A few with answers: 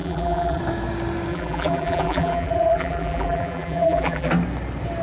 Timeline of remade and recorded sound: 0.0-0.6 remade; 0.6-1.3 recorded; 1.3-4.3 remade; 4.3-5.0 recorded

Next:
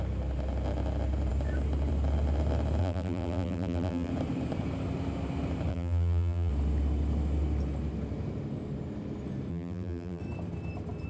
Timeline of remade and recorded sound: 0.0-2.8 recorded; 2.8-4.1 remade; 4.1-5.7 recorded; 5.7-6.5 remade; 6.5-9.5 recorded; 9.5-10.2 remade; 10.2-11.1 recorded